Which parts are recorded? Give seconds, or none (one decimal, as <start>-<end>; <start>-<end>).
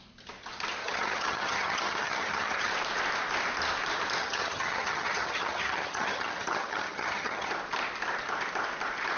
0.0-0.8; 2.7-4.2; 7.5-9.2